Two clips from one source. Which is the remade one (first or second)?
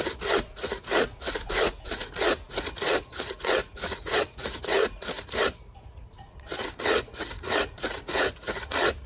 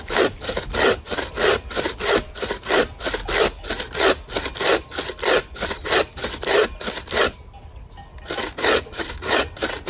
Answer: first